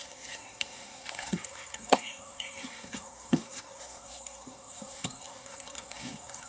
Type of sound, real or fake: fake